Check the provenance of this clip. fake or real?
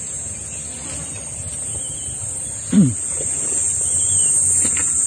real